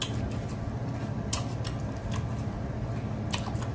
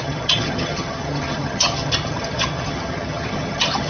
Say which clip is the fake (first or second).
second